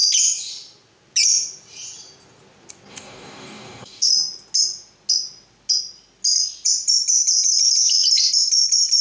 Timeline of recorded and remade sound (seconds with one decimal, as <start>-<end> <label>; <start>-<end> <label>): 0.0-2.9 recorded; 2.9-4.1 remade; 4.1-9.0 recorded